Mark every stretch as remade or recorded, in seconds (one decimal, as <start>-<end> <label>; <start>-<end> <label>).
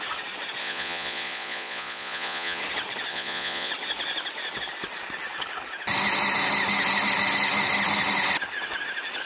0.0-0.6 recorded; 0.6-2.6 remade; 2.6-3.1 recorded; 3.1-3.7 remade; 3.7-9.3 recorded